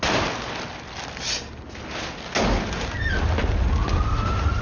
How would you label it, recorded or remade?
recorded